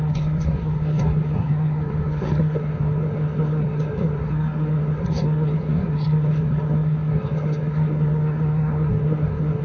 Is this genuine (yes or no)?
no